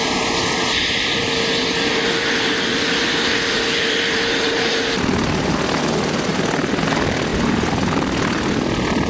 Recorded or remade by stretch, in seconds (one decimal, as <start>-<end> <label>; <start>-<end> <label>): 0.0-9.1 recorded